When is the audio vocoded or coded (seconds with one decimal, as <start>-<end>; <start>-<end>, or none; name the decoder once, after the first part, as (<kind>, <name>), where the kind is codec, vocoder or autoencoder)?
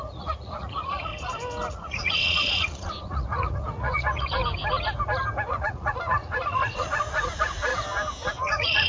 0.0-1.1 (vocoder, Vocos); 1.7-4.4; 5.5-7.7; 8.3-8.9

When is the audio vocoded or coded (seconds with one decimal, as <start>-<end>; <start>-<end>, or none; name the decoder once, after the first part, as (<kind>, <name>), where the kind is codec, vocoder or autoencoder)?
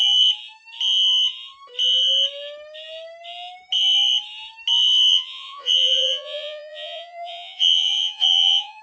5.1-8.8 (vocoder, Vocos)